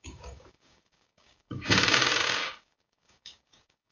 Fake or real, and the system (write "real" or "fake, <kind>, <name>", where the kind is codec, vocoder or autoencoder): fake, codec, DAC